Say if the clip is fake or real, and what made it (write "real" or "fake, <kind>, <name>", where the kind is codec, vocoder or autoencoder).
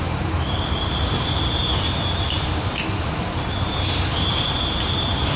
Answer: fake, vocoder, BigVGAN v2